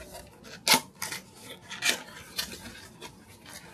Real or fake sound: real